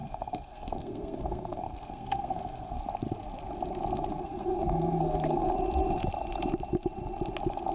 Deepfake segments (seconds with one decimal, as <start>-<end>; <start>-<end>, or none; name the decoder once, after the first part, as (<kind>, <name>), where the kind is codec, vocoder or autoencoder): 0.0-2.8 (codec, SNAC); 4.1-5.5